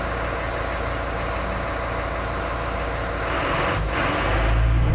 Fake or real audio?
real